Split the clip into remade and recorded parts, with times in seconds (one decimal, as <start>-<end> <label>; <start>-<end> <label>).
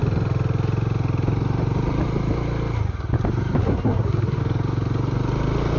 0.0-3.6 recorded; 3.6-4.4 remade; 4.4-5.8 recorded